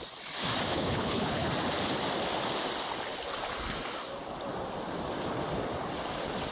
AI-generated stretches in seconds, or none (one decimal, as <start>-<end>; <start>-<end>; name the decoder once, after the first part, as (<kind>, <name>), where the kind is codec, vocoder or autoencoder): 0.7-1.5 (codec, HILCodec)